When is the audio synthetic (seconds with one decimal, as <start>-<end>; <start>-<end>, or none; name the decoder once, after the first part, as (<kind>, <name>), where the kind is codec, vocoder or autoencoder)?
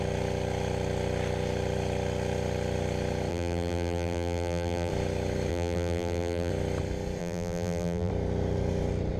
3.3-4.9 (vocoder, BigVGAN v2); 5.5-6.5; 7.2-8.1